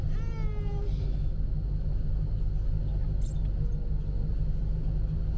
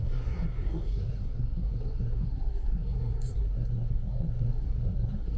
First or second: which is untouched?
first